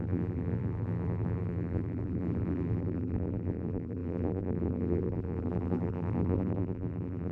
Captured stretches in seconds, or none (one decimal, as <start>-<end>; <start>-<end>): none